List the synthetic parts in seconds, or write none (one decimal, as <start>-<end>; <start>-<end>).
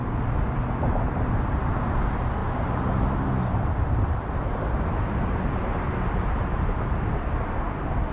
none